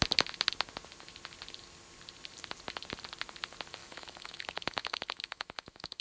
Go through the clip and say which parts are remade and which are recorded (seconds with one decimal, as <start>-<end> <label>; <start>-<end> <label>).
0.0-3.8 recorded; 3.8-6.0 remade